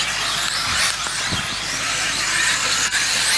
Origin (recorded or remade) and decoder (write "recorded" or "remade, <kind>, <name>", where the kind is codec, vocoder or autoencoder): recorded